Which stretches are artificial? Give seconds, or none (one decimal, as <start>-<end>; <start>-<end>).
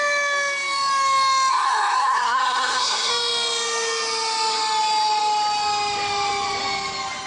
1.5-3.1